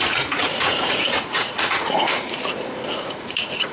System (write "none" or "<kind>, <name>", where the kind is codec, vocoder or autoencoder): vocoder, Vocos